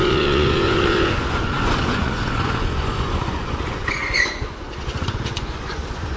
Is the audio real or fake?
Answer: fake